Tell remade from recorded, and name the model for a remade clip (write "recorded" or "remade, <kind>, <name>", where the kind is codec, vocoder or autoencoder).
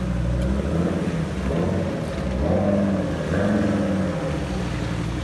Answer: recorded